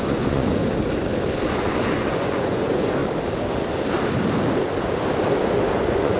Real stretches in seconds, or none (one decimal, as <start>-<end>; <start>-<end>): 0.6-1.5; 3.0-5.7